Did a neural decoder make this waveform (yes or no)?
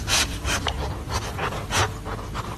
no